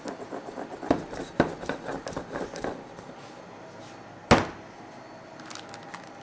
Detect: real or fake real